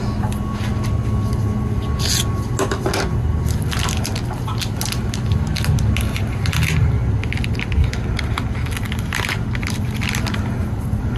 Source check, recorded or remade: recorded